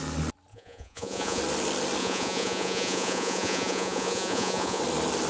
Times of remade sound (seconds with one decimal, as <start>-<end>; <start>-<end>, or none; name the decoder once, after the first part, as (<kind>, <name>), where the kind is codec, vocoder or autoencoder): 0.5-1.4 (vocoder, Vocos); 2.0-4.8